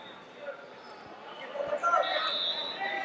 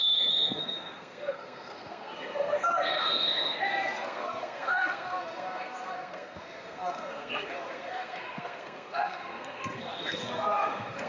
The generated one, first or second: second